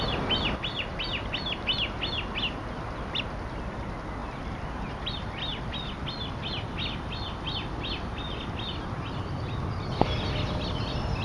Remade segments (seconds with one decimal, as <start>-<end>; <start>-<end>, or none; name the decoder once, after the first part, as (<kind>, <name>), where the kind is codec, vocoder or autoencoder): 4.2-5.6 (vocoder, BigVGAN v2)